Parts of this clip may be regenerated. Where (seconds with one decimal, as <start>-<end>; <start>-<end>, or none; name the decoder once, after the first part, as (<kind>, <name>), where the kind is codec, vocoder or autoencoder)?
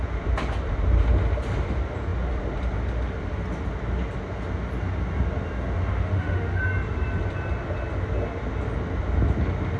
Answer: 5.9-6.6 (autoencoder, DAC-VAE)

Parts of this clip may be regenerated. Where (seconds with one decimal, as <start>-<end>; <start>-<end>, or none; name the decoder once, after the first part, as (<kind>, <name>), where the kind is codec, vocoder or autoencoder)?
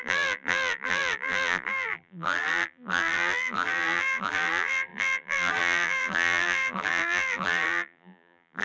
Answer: 0.0-8.6 (vocoder, BigVGAN v2)